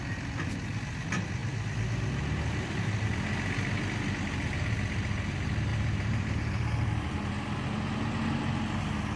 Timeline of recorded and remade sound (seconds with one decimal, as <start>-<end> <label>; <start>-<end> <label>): 0.0-5.7 recorded; 5.7-6.9 remade; 6.9-9.2 recorded